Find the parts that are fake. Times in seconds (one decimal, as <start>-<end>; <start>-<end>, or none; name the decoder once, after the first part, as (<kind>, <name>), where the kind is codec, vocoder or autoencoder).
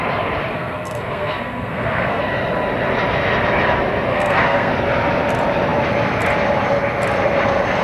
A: 0.5-2.2 (codec, SNAC); 4.1-4.7